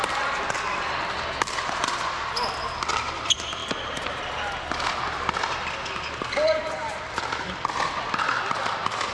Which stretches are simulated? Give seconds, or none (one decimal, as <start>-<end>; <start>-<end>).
none